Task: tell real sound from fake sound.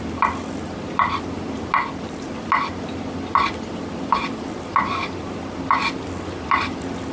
real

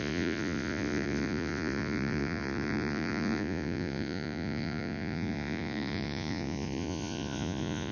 fake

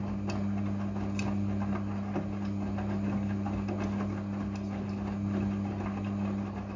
real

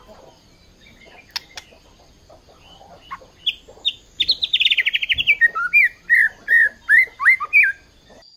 real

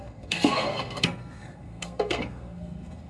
fake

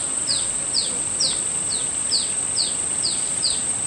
real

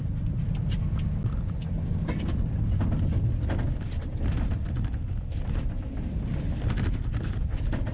real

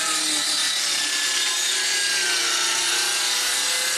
real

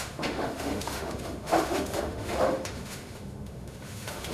fake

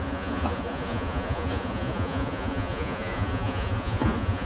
fake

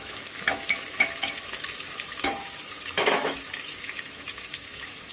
fake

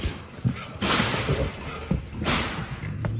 real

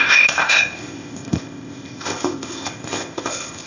fake